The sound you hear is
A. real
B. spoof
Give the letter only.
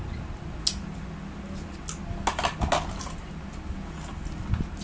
A